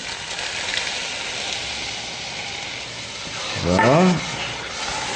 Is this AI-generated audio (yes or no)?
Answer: no